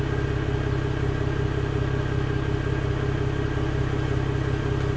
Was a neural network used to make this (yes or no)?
no